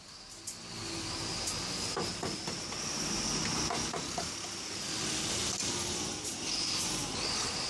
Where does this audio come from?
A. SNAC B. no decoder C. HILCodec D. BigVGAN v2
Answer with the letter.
B